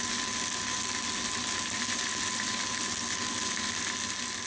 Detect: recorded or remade recorded